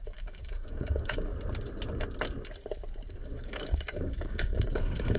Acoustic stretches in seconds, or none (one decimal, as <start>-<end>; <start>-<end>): 1.3-3.1